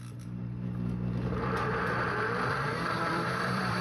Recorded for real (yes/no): no